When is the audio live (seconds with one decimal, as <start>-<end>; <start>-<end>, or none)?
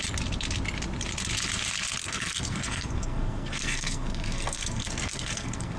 0.0-2.0